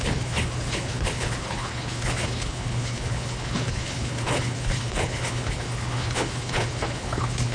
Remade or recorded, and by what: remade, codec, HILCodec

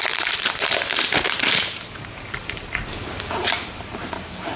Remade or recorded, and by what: remade, vocoder, BigVGAN v2